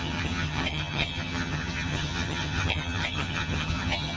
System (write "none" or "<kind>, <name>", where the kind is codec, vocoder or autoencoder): vocoder, HiFi-GAN